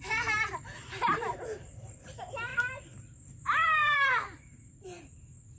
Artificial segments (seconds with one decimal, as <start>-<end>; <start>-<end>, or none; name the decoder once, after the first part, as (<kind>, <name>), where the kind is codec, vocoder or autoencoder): 0.0-2.5 (vocoder, BigVGAN v2); 3.0-5.6